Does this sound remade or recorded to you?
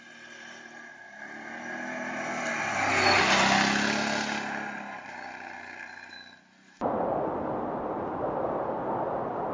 recorded